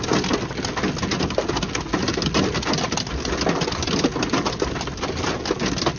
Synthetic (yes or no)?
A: no